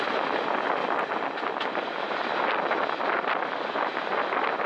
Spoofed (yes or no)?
no